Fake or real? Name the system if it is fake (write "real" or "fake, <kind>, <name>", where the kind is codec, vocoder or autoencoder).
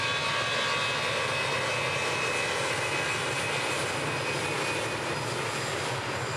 real